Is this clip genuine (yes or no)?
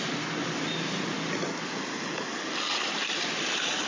yes